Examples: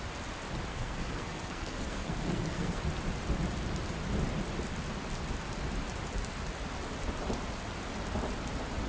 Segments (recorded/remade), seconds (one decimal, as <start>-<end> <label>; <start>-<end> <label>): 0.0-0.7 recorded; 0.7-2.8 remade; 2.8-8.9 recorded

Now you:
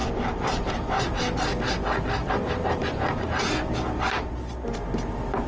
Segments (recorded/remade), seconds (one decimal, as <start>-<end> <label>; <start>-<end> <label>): 0.0-1.2 remade; 1.2-2.2 recorded; 2.2-4.4 remade; 4.4-5.5 recorded

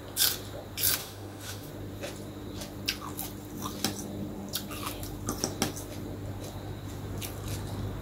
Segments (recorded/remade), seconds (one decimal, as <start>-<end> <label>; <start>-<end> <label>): 0.0-1.0 recorded; 1.0-1.7 remade; 1.7-8.0 recorded

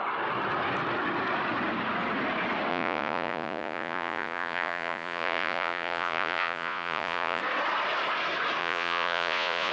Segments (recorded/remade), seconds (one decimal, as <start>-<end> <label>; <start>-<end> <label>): 0.0-2.7 recorded; 2.7-7.4 remade; 7.4-8.6 recorded; 8.6-9.7 remade

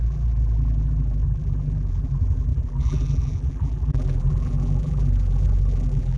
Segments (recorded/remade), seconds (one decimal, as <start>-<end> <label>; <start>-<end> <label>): 0.0-6.2 remade

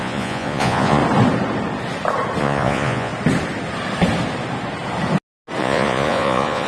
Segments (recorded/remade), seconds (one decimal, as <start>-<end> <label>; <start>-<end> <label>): 0.0-1.0 remade; 1.0-2.4 recorded; 2.4-3.1 remade; 3.1-5.6 recorded; 5.6-6.7 remade